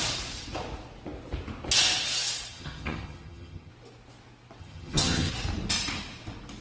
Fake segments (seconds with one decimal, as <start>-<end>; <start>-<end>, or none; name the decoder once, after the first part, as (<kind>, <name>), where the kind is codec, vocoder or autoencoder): 2.5-3.7 (vocoder, HiFi-GAN); 4.6-5.3

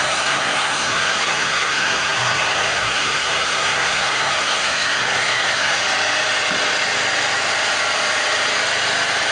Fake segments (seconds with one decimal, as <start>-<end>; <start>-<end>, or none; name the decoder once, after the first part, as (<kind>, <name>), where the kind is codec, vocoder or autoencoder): 0.0-5.8 (codec, SNAC)

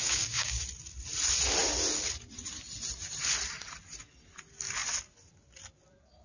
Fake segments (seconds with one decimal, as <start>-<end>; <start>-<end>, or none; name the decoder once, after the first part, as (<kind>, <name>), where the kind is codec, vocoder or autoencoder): 0.0-0.6 (codec, DAC)

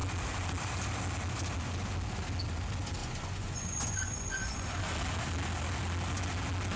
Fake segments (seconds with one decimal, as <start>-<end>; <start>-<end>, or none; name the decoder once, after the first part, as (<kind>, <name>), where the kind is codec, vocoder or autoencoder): 3.0-4.8 (vocoder, Vocos)

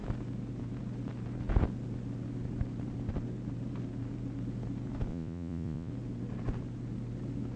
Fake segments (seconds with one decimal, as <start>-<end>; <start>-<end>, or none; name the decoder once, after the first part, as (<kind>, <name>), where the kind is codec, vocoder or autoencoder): 5.1-5.9 (vocoder, Vocos)

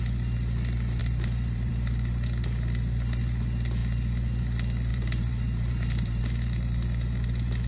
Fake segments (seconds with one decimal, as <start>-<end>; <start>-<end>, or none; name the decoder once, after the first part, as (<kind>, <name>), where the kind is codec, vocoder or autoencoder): 1.0-1.7 (vocoder, BigVGAN v2); 4.9-6.2

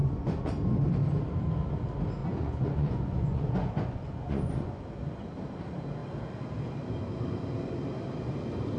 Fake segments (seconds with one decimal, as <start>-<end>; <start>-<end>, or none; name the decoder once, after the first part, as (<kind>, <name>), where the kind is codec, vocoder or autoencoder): 0.0-0.5 (vocoder, Vocos); 2.2-4.8